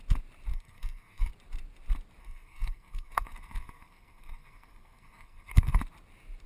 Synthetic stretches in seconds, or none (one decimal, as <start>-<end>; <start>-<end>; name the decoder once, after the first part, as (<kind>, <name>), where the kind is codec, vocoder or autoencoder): 0.5-1.3 (codec, SNAC); 2.2-5.8